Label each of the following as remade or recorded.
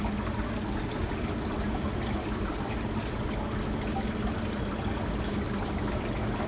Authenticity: recorded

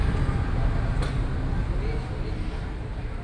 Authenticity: recorded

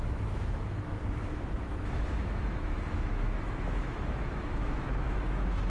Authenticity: remade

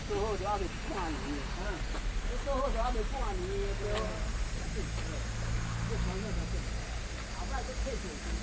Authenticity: recorded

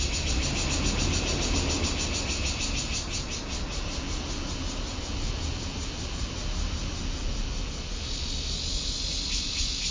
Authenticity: recorded